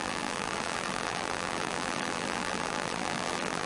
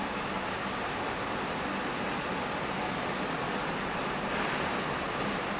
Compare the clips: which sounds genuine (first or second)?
second